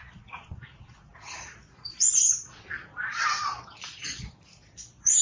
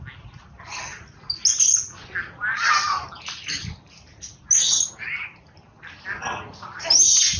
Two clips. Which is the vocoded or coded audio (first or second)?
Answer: first